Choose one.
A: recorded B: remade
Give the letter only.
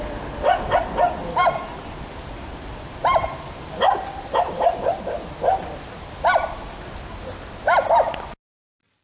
A